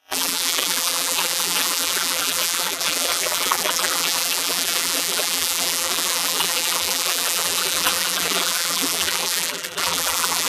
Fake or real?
fake